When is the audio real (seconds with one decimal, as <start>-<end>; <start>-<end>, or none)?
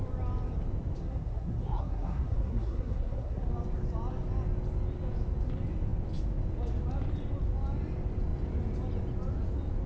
0.0-1.0; 3.5-9.9